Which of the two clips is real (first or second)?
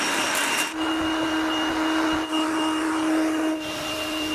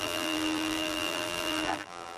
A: first